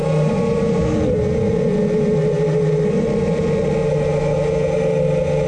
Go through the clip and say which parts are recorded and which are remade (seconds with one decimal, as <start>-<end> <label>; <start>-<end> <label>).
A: 0.0-0.8 remade; 0.8-5.5 recorded